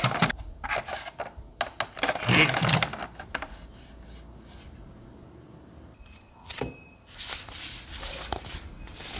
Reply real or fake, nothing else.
real